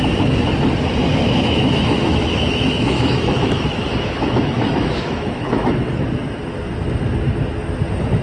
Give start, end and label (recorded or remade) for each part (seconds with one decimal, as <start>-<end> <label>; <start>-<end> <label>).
0.0-1.1 recorded; 1.1-6.0 remade; 6.0-8.2 recorded